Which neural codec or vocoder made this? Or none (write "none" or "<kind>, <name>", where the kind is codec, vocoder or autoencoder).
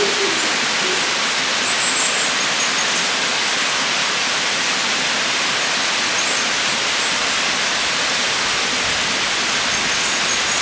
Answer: none